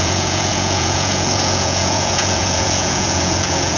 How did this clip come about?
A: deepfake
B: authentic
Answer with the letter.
A